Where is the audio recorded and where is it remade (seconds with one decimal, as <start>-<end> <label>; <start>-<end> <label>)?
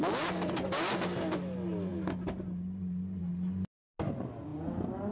0.0-5.1 recorded